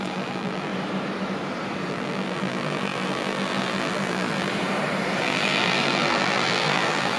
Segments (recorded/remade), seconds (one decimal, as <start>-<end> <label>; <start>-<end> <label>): 0.0-0.7 remade; 0.7-1.9 recorded; 1.9-4.5 remade; 4.5-5.2 recorded; 5.2-7.2 remade